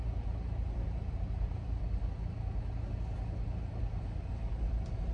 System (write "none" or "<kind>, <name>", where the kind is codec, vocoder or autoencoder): none